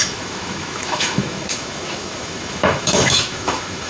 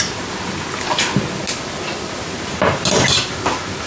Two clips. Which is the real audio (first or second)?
second